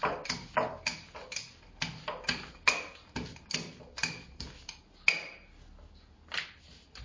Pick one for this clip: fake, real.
real